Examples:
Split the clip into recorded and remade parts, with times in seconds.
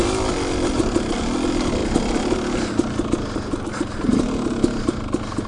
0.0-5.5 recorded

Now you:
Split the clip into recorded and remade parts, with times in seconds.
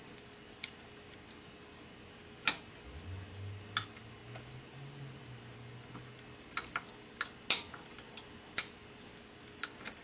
0.0-10.0 recorded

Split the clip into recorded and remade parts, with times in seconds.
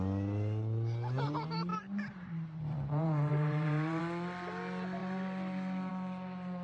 0.0-1.7 recorded; 1.7-4.0 remade; 4.0-6.6 recorded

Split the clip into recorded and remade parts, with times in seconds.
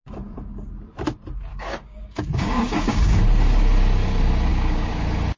0.0-1.5 recorded; 1.5-3.2 remade; 3.2-4.5 recorded; 4.5-5.0 remade; 5.0-5.4 recorded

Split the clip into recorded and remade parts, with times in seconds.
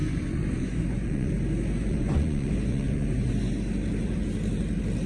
0.0-1.3 remade; 1.3-1.8 recorded; 1.8-3.5 remade; 3.5-5.1 recorded